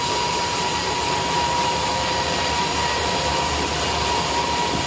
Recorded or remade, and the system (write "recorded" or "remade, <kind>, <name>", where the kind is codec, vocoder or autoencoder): remade, vocoder, BigVGAN v2